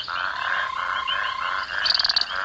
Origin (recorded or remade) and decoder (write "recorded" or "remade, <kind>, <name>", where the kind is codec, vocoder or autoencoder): recorded